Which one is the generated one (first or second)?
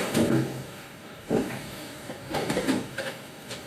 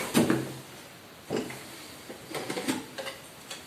first